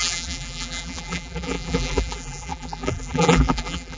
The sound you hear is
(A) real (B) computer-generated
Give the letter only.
B